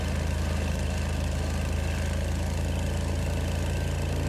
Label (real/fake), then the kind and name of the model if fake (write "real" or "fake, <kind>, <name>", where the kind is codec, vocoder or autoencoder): real